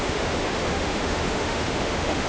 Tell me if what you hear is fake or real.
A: fake